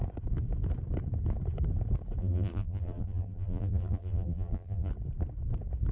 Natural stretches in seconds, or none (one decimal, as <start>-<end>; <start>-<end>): 0.0-2.2; 4.9-5.9